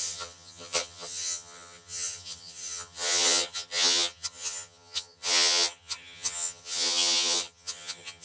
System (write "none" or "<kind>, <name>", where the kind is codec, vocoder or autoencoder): vocoder, HiFi-GAN